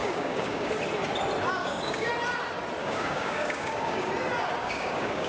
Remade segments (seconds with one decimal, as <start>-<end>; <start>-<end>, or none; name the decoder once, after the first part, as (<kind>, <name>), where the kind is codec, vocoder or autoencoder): 0.0-0.7 (codec, DAC); 1.6-2.1; 2.8-4.1; 4.6-5.3